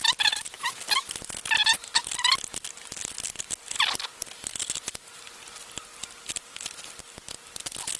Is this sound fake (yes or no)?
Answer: no